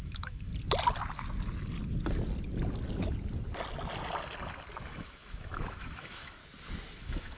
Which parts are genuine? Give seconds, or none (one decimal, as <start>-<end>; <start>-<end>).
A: 0.5-4.9; 6.4-7.0